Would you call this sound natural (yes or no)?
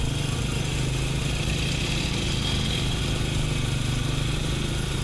yes